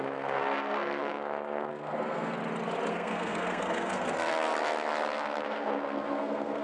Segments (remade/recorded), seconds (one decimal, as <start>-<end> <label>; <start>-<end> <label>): 0.0-2.4 remade; 2.4-2.9 recorded; 2.9-4.3 remade; 4.3-5.4 recorded; 5.4-6.6 remade